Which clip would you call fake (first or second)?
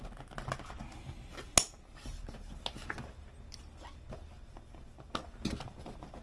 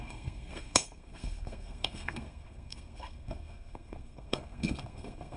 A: second